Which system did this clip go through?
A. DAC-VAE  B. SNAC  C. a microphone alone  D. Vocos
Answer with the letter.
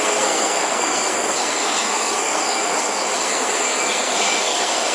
B